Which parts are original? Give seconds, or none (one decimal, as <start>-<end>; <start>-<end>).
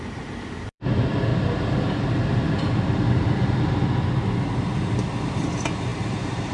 1.3-5.2